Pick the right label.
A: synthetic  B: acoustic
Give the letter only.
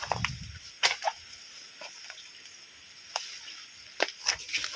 B